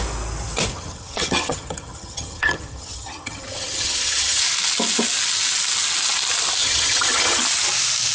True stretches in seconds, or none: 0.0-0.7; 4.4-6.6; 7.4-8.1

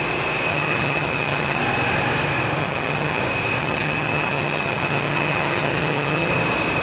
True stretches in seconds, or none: 0.0-0.5; 1.6-2.6; 3.2-3.6; 6.3-6.8

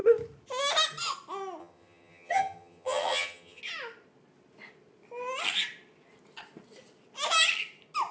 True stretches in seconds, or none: 0.0-1.6; 3.6-8.1

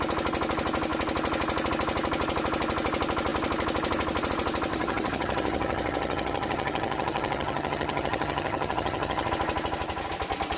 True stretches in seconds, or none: 0.0-4.7; 9.3-10.6

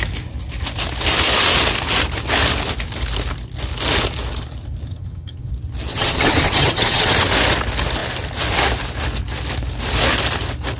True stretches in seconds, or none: 0.0-4.9; 5.5-5.9; 7.1-10.8

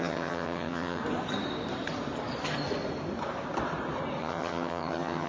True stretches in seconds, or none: 1.0-4.2